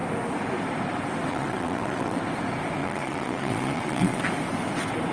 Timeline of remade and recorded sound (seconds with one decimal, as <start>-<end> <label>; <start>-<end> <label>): 0.0-1.3 recorded; 1.3-2.2 remade; 2.2-2.8 recorded; 2.8-4.2 remade; 4.2-5.1 recorded